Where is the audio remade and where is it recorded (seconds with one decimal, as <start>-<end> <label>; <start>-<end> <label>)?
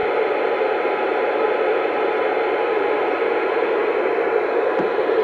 0.0-5.2 recorded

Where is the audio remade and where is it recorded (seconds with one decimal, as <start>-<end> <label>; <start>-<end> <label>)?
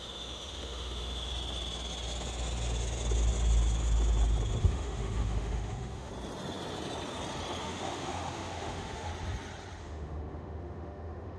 0.0-1.3 remade; 1.3-4.6 recorded; 4.6-6.1 remade; 6.1-7.6 recorded; 7.6-9.1 remade; 9.1-9.8 recorded; 9.8-11.4 remade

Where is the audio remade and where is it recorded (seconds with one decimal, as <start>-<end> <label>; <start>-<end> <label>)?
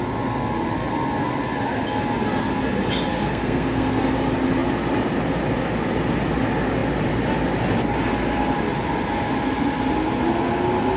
0.0-3.1 recorded; 3.1-4.0 remade; 4.0-11.0 recorded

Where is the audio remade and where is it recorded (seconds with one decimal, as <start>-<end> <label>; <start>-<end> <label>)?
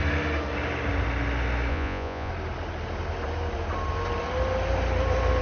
0.0-1.7 recorded; 1.7-2.3 remade; 2.3-5.4 recorded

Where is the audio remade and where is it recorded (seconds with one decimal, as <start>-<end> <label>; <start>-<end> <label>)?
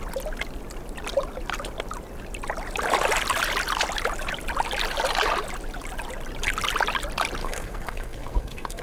0.0-7.4 recorded; 7.4-8.8 remade